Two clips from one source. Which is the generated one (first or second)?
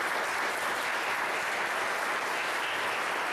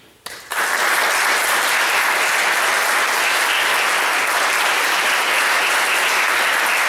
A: first